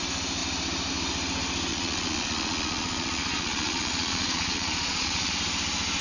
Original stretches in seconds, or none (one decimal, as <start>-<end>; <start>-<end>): 0.0-1.7; 5.3-6.0